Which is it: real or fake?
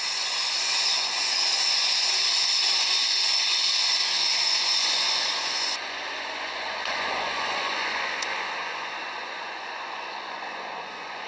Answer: fake